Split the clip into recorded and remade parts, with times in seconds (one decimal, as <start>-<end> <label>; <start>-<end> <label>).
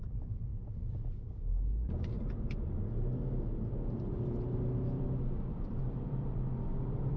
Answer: 0.0-0.5 remade; 0.5-4.7 recorded; 4.7-7.2 remade